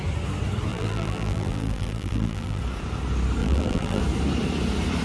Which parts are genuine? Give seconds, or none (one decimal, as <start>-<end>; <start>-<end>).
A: 0.0-0.7; 2.6-3.4; 4.0-5.0